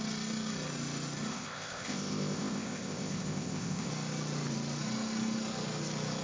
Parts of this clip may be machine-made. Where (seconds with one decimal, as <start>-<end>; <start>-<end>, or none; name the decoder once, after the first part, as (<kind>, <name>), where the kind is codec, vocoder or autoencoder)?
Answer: 1.3-3.9 (codec, ZipCodec)